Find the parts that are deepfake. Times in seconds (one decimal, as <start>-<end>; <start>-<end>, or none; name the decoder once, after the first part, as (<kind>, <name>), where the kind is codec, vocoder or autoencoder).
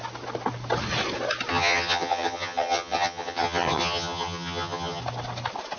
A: 1.5-5.0 (vocoder, HiFi-GAN)